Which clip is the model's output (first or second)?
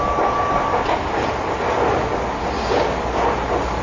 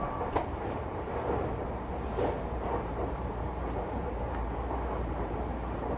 second